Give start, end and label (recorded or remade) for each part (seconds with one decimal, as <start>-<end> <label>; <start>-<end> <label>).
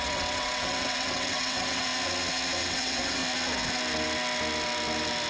0.0-1.9 remade; 1.9-2.6 recorded; 2.6-3.2 remade; 3.2-5.3 recorded